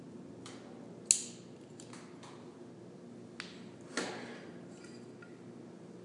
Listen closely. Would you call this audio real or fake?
real